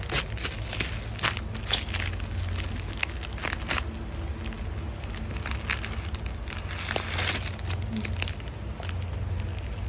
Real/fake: real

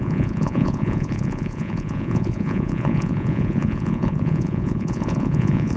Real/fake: fake